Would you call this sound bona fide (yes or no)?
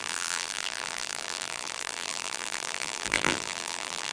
no